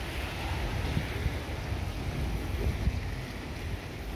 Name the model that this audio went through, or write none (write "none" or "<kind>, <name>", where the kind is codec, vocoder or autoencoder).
none